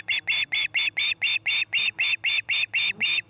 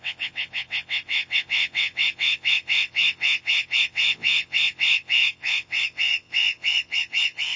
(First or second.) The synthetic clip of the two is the second